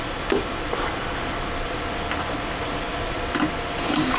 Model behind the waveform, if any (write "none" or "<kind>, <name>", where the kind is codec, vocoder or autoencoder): none